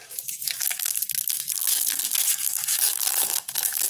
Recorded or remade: remade